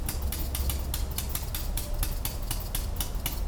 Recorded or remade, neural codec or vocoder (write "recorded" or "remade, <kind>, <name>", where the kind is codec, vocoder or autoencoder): recorded